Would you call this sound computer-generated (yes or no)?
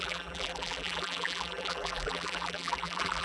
yes